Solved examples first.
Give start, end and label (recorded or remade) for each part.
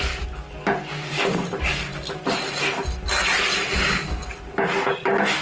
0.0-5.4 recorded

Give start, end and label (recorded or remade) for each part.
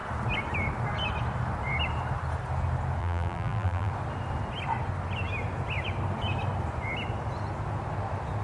0.0-3.0 recorded; 3.0-3.9 remade; 3.9-8.4 recorded